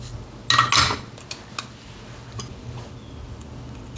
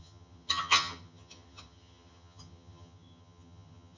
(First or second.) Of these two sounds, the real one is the first